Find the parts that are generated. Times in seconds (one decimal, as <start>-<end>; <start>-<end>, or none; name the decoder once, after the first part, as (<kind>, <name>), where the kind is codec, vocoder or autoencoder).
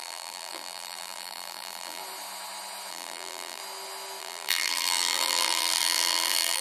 0.0-2.0 (vocoder, BigVGAN v2); 2.9-3.6; 4.2-6.6